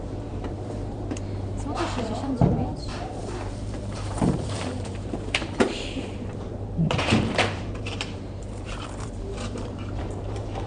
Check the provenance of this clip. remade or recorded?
remade